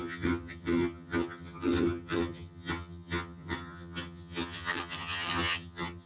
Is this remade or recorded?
remade